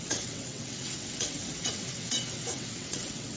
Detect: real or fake fake